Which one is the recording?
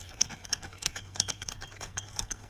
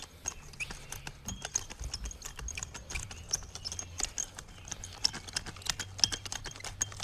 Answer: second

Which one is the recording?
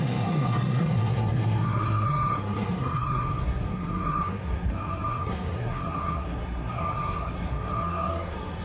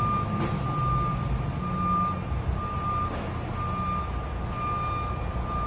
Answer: second